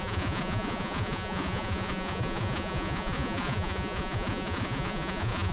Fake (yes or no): yes